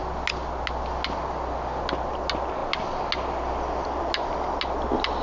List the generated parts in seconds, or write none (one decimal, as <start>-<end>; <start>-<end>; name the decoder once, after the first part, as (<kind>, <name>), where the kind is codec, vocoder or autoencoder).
none